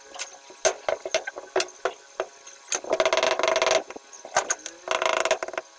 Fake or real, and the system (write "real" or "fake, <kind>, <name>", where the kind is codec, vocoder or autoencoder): real